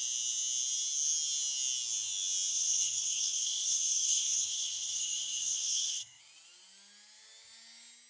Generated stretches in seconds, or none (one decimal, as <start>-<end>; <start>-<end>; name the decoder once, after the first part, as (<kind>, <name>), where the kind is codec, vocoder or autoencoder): 2.5-6.2 (codec, SNAC)